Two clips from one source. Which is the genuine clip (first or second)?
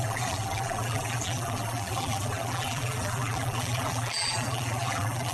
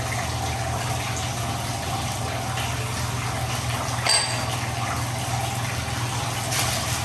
second